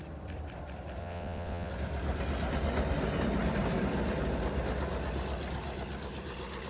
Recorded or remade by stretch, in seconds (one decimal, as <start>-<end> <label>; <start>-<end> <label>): 0.0-1.0 recorded; 1.0-1.7 remade; 1.7-6.7 recorded